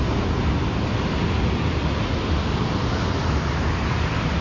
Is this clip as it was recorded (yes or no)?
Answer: yes